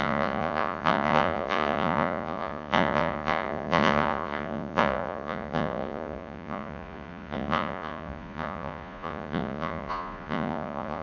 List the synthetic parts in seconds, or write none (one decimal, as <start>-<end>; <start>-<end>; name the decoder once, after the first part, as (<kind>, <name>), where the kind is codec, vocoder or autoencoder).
0.0-11.0 (vocoder, Vocos)